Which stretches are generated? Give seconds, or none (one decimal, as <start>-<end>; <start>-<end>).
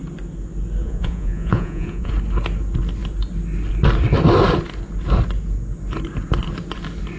0.8-2.1